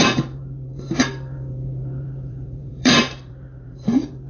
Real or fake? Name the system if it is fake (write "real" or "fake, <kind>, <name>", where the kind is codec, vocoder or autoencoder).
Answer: fake, vocoder, BigVGAN v2